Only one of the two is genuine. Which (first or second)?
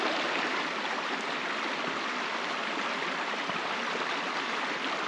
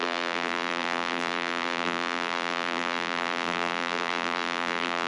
first